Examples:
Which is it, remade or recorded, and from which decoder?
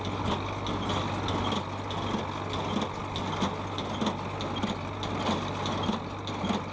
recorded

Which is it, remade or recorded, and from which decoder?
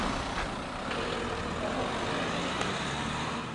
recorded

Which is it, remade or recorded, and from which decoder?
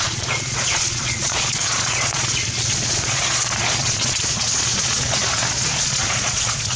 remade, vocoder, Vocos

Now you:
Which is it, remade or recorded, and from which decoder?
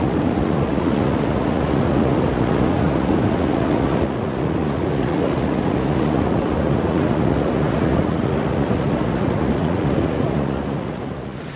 remade, vocoder, Vocos